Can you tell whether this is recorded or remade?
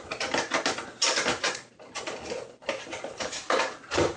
recorded